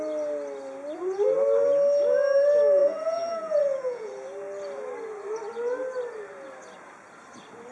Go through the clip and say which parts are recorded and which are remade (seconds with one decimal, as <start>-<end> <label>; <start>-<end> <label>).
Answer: 0.0-2.8 recorded; 2.8-4.1 remade; 4.1-7.7 recorded